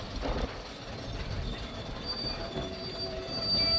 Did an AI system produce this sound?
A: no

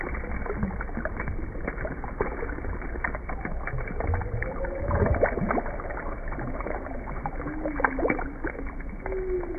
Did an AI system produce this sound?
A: no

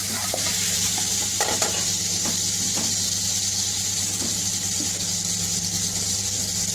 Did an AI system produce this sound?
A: no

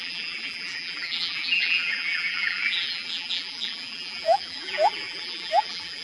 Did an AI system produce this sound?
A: yes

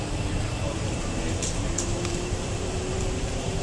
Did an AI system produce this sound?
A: yes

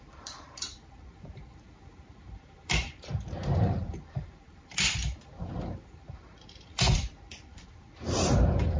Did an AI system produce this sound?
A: yes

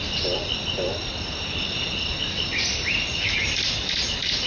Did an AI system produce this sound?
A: yes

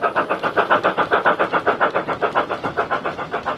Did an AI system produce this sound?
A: no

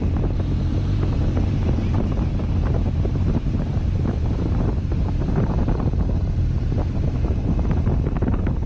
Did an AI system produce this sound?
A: yes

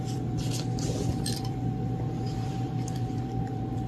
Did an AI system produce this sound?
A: yes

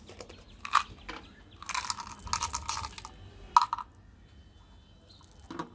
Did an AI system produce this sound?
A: no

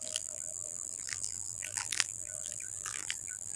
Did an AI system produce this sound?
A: yes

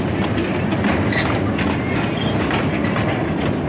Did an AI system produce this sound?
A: yes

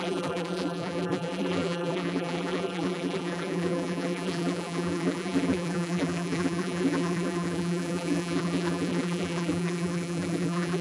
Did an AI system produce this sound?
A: yes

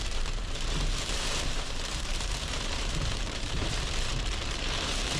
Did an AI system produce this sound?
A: yes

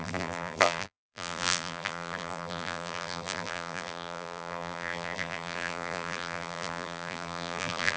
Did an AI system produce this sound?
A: yes